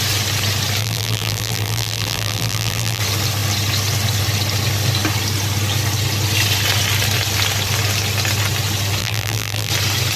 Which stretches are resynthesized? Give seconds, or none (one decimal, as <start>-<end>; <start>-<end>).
0.8-3.0; 9.0-9.7